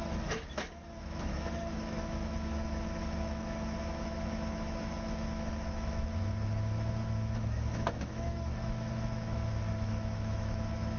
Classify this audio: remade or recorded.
remade